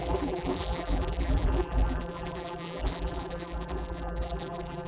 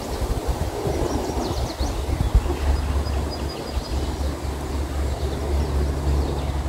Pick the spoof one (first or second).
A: first